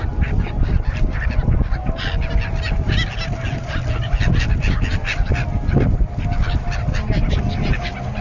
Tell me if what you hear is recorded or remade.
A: recorded